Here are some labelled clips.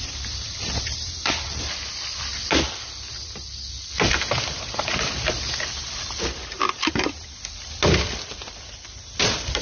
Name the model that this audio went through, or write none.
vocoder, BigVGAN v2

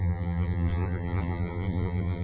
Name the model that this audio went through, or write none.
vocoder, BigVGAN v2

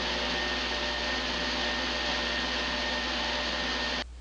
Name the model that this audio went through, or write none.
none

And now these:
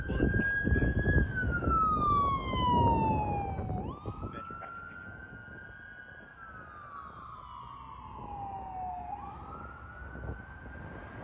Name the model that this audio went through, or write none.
none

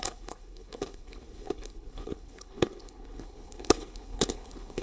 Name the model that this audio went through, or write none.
codec, HILCodec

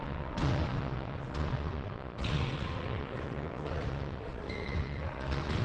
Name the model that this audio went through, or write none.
vocoder, WaveNeXt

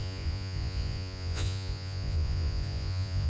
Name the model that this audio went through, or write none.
vocoder, Vocos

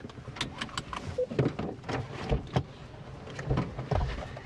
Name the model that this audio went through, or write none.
none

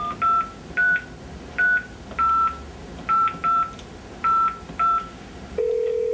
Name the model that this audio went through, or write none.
none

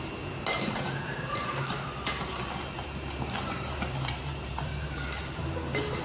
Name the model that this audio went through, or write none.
vocoder, BigVGAN v2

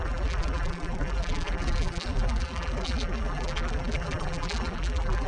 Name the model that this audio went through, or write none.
vocoder, BigVGAN v2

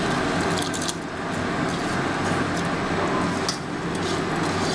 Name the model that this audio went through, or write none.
none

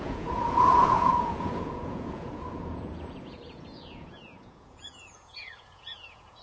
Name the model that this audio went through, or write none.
vocoder, Vocos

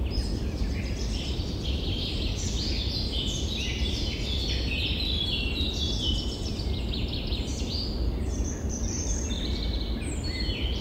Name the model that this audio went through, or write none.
none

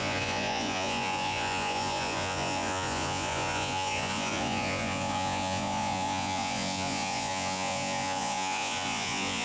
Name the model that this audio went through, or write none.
vocoder, Vocos